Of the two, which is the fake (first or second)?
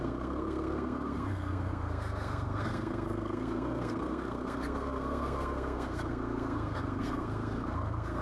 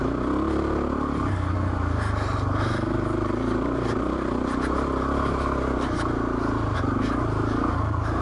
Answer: first